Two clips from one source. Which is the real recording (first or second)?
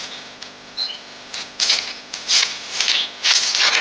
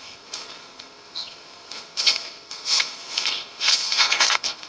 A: first